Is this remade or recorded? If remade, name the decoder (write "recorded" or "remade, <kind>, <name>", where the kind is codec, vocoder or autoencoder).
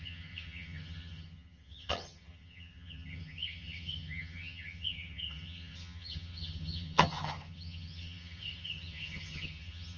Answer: remade, vocoder, HiFi-GAN